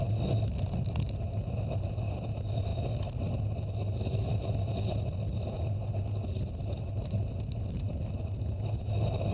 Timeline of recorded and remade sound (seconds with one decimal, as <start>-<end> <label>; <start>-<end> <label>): 0.0-2.7 recorded; 2.7-3.2 remade; 3.2-9.3 recorded